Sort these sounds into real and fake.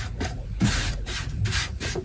fake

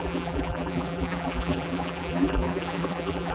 fake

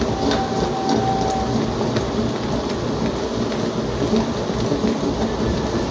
real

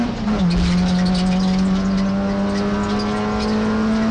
real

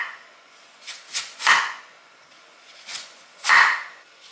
fake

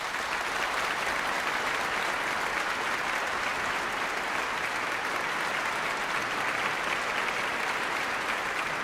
real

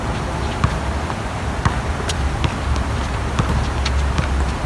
real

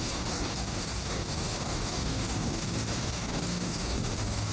fake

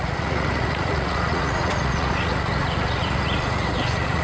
fake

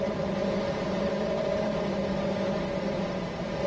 real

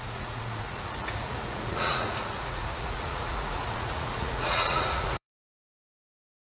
fake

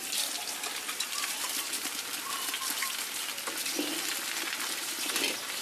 real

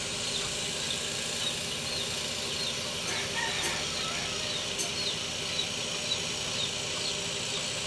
real